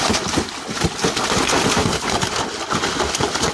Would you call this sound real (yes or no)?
yes